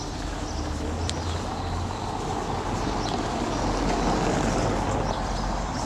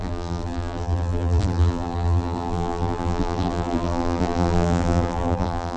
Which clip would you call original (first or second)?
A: first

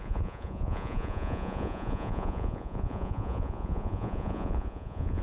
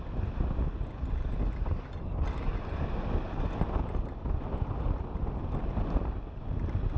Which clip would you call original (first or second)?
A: second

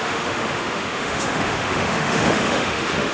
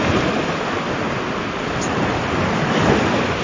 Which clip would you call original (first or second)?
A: second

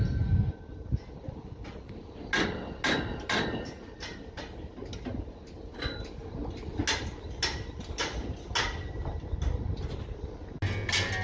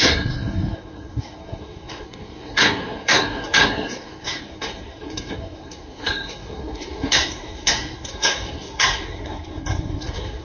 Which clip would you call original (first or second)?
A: first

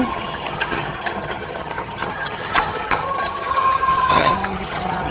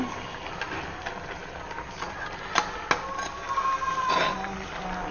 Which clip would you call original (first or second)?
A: second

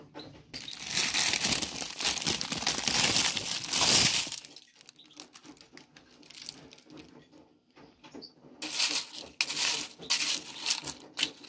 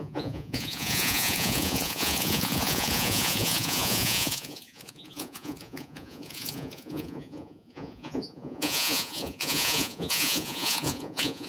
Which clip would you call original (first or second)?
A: first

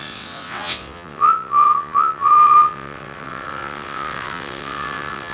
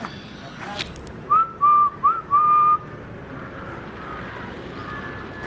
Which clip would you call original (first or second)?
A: second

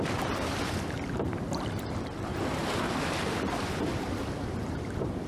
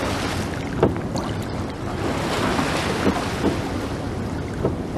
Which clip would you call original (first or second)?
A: second